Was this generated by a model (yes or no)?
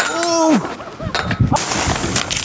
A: no